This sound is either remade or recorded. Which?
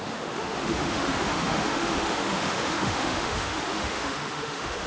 remade